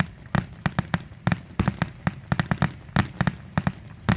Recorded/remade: recorded